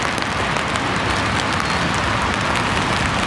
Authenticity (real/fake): real